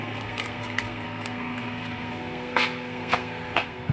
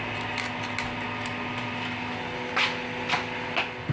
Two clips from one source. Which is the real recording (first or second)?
second